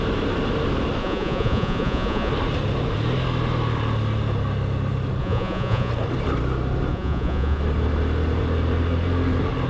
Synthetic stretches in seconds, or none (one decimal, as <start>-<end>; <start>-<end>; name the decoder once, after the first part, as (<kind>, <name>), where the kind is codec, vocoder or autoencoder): 1.0-2.3 (vocoder, Vocos); 5.2-5.9; 6.9-7.6